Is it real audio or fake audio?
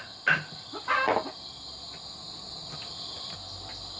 real